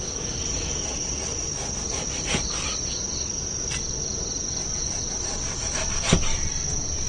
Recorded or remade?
recorded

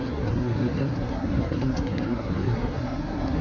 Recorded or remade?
remade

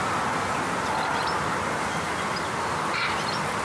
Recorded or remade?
recorded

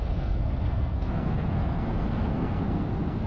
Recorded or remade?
remade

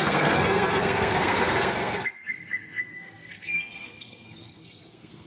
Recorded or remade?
remade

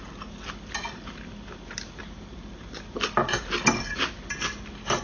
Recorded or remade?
recorded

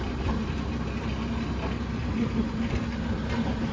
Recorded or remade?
recorded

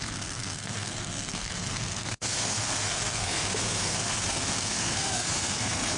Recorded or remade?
remade